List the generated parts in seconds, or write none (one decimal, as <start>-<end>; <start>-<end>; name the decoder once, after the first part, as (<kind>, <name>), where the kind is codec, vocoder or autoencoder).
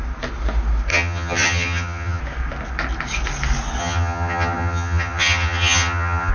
0.9-2.2 (vocoder, HiFi-GAN); 3.8-6.3